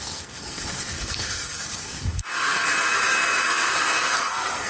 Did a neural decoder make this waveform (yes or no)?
yes